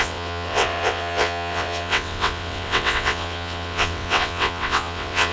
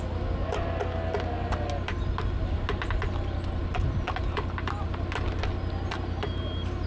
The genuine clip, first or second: second